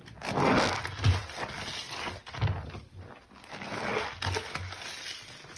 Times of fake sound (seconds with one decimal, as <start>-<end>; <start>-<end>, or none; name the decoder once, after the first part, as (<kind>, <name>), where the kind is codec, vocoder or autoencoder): none